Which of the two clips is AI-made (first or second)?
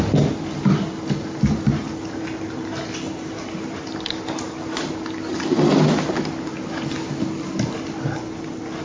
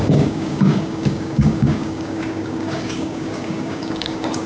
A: second